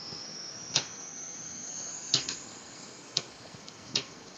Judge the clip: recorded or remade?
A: remade